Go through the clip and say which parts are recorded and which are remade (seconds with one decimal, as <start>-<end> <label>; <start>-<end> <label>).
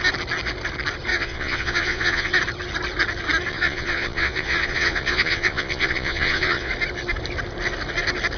0.0-1.1 recorded; 1.1-2.3 remade; 2.3-3.5 recorded; 3.5-6.7 remade; 6.7-8.4 recorded